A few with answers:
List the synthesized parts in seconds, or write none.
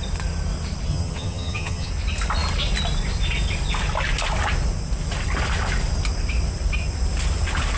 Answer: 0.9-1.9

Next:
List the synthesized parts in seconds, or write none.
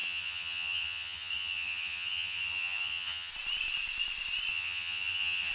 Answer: 0.0-3.3; 4.5-5.5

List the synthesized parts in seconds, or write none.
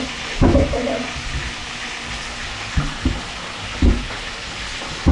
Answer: none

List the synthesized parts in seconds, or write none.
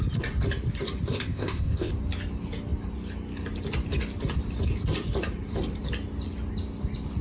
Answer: 1.1-1.9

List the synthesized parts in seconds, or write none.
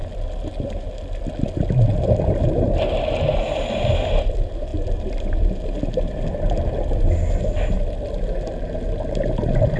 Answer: none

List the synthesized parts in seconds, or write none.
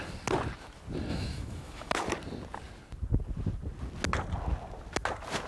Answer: 1.1-1.9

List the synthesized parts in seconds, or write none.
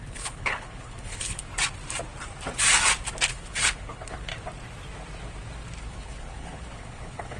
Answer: 0.0-1.5; 3.3-4.3; 5.8-7.4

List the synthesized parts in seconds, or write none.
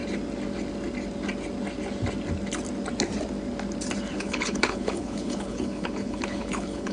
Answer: 4.1-6.9